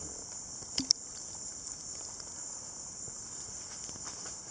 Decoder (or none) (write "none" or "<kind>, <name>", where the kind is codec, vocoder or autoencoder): none